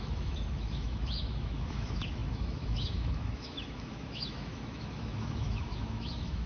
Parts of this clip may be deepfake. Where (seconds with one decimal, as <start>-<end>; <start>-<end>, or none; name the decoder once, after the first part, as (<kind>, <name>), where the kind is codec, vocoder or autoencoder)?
0.0-6.5 (autoencoder, DAC-VAE)